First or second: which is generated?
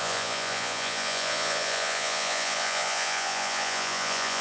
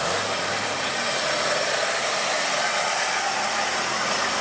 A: first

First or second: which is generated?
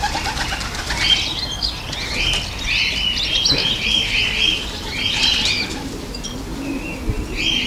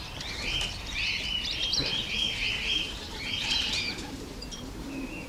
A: second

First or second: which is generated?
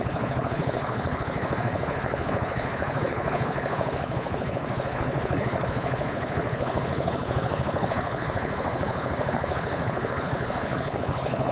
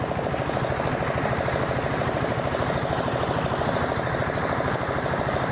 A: first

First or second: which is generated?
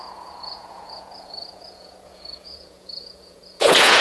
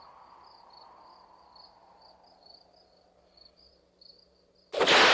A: first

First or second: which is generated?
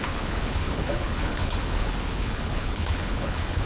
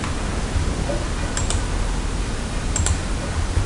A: first